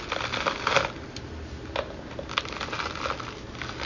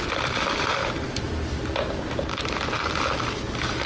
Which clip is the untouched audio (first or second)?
first